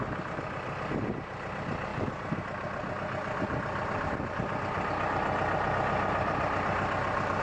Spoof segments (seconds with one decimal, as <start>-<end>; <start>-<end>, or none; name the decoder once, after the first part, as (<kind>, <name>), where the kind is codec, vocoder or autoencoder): none